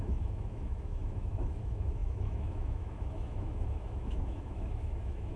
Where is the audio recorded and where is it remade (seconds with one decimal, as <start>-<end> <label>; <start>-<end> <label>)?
0.0-5.4 remade